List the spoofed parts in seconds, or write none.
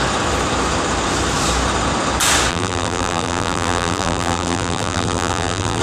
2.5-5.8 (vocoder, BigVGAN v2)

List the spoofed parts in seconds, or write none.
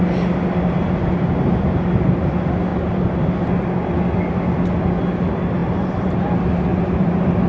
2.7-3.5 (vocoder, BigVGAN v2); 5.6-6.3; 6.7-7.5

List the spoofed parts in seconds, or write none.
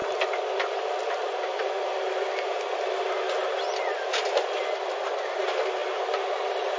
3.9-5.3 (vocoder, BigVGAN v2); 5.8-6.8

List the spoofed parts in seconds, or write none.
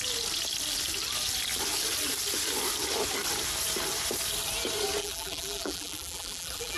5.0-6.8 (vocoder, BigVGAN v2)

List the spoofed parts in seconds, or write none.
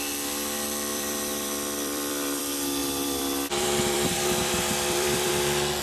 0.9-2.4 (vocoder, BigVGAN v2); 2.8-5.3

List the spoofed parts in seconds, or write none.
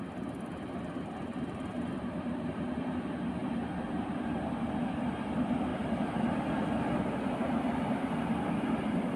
1.3-2.7 (vocoder, BigVGAN v2); 5.7-6.5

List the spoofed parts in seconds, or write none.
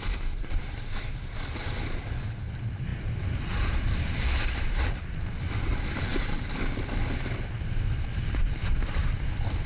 none